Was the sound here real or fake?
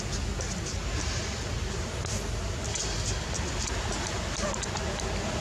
real